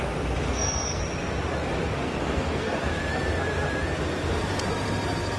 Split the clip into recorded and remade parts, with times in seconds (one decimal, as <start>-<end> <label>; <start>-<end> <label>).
0.0-0.5 recorded; 0.5-1.0 remade; 1.0-1.9 recorded; 1.9-2.9 remade; 2.9-5.4 recorded